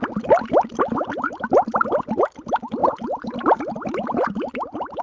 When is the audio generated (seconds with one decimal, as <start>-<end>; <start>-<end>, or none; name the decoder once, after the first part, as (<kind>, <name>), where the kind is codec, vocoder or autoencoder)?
none